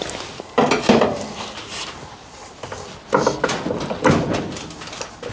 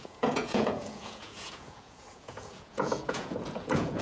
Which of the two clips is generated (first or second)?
second